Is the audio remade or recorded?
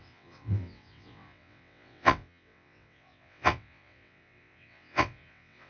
remade